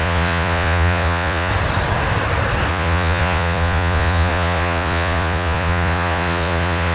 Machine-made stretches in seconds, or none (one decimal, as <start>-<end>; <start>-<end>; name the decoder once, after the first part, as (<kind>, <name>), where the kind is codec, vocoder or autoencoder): 0.0-1.5 (vocoder, Vocos); 2.7-6.9